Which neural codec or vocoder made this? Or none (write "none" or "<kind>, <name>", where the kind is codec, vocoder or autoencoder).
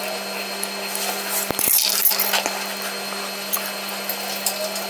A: none